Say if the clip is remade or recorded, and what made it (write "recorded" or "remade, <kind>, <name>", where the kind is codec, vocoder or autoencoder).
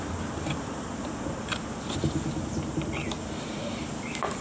remade, vocoder, BigVGAN v2